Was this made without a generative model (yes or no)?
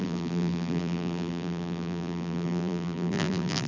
no